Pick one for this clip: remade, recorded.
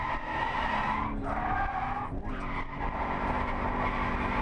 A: recorded